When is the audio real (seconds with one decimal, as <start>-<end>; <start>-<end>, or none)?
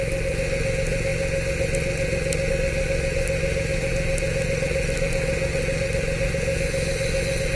0.0-7.6